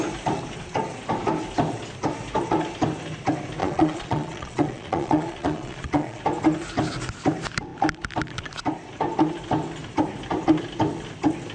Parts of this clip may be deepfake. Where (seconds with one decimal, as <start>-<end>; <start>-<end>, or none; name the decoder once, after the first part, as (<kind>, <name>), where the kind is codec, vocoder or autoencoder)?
3.6-6.2 (vocoder, Vocos)

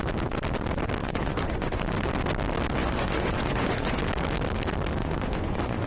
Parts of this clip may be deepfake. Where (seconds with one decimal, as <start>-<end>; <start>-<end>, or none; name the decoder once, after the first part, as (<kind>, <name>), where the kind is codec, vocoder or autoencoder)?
1.0-1.8 (vocoder, Vocos); 2.8-4.0; 5.0-5.9

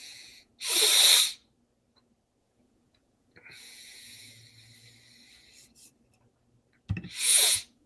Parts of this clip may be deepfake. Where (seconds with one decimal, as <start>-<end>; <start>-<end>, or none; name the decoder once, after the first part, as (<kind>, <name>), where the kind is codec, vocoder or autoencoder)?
0.0-0.5 (vocoder, Vocos); 2.4-4.4; 7.2-7.9

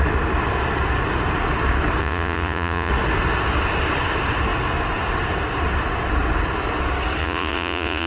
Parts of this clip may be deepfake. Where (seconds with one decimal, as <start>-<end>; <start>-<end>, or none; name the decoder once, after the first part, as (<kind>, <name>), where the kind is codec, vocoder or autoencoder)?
2.0-2.9 (vocoder, Vocos); 7.2-8.1

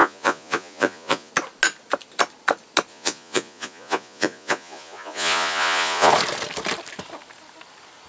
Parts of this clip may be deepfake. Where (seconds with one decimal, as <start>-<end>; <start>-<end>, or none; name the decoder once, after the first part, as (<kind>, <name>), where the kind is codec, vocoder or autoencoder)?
0.0-1.3 (vocoder, Vocos); 2.9-6.1

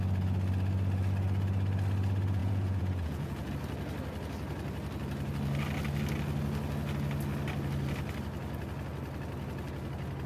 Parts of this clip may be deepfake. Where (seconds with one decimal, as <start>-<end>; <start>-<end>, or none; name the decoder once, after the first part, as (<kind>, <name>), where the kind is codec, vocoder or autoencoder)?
2.4-3.5 (vocoder, Vocos)